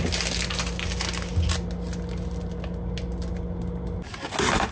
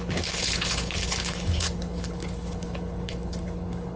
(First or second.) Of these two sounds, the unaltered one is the first